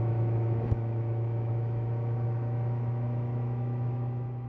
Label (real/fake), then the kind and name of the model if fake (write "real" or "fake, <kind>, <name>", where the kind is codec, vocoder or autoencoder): fake, autoencoder, DAC-VAE